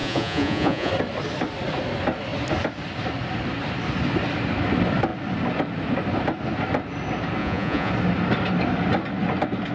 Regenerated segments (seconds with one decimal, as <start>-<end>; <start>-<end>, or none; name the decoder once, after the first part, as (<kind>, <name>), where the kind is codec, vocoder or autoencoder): 0.0-0.9 (vocoder, Vocos); 7.4-7.9